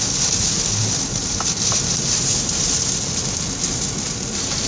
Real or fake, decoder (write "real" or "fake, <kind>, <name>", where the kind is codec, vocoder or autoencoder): real